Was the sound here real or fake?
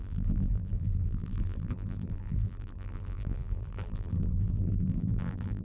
fake